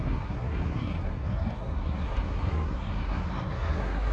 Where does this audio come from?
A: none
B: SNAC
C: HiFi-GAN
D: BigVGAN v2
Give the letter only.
B